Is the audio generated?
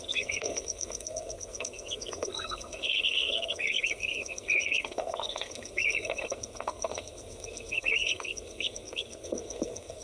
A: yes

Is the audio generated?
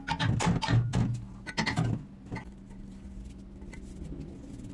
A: no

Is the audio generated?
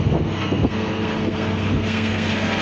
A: yes